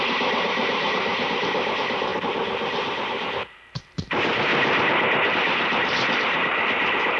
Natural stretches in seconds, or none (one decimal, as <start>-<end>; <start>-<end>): 4.5-5.3

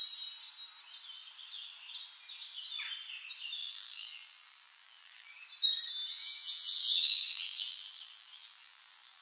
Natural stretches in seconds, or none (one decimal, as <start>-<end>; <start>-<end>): 0.0-3.6; 5.3-6.1

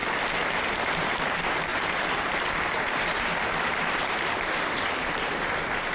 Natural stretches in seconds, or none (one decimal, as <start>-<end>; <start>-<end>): 0.0-0.8

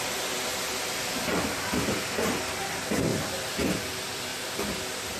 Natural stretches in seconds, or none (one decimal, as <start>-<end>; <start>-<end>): 3.1-3.7; 4.3-5.2

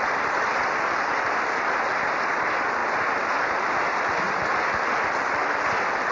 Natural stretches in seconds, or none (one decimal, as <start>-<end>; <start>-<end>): 2.8-6.1

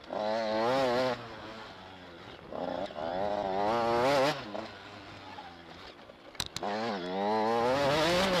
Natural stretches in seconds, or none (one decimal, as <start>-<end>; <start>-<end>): 0.0-8.4